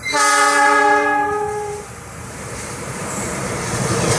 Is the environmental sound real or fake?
fake